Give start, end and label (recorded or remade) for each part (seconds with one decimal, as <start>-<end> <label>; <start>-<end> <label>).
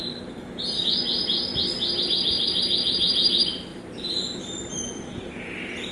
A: 0.0-5.9 recorded